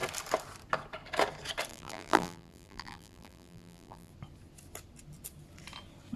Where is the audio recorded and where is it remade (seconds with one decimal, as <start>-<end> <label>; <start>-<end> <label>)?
0.0-1.7 recorded; 1.7-4.1 remade; 4.1-6.2 recorded